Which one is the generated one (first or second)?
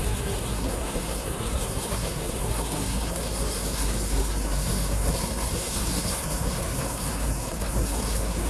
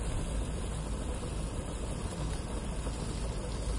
first